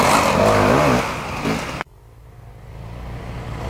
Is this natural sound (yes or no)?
yes